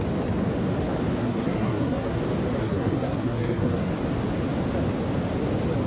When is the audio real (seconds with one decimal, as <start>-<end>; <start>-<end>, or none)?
0.0-1.2; 2.2-2.6; 3.9-5.9